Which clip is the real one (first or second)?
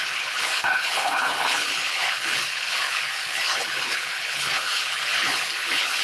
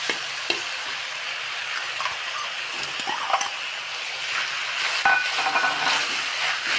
second